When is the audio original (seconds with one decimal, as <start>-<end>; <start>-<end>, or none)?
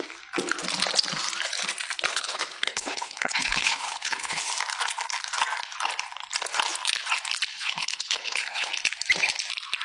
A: 0.0-2.1; 4.4-7.5; 8.7-9.8